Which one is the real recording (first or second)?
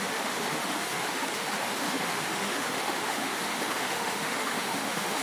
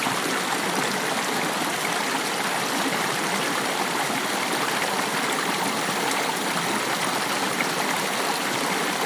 second